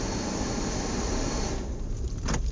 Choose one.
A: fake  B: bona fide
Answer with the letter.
B